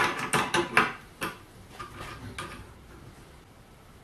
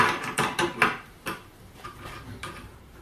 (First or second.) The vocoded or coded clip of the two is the second